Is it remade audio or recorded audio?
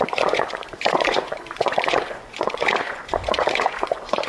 remade